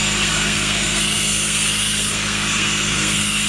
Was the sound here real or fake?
fake